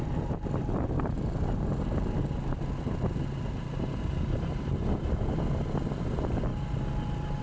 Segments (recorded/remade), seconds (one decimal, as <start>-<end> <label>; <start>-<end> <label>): 0.0-7.4 recorded